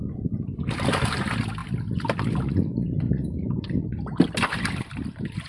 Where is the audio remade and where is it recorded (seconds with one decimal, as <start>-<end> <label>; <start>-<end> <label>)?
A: 0.0-5.5 recorded